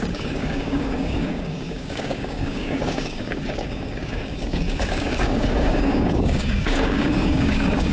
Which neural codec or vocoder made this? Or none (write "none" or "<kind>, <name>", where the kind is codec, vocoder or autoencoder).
codec, DAC